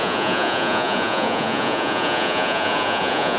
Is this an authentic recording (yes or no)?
no